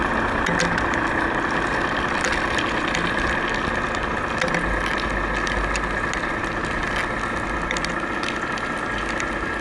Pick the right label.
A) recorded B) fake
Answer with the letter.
A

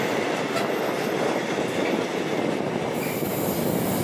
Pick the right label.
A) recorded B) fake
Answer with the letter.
A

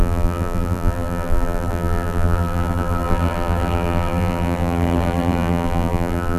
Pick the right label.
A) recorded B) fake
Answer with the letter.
B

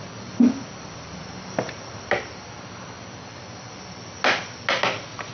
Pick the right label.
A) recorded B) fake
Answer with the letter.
A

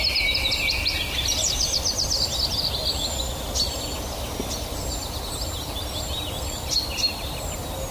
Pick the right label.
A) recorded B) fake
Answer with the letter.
A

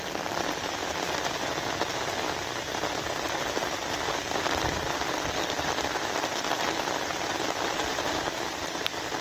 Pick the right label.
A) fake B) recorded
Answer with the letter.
B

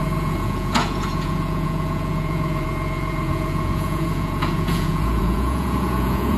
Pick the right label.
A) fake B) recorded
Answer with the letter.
A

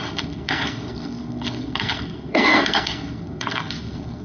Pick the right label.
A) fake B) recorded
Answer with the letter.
A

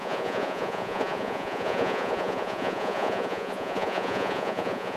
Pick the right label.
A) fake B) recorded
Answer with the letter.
A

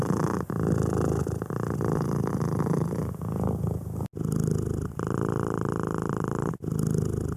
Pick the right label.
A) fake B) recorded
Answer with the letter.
B